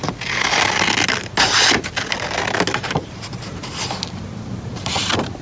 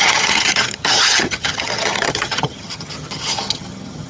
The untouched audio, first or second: first